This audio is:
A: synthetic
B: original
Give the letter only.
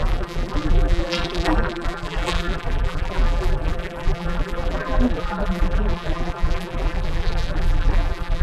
A